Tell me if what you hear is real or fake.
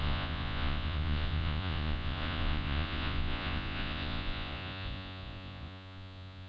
fake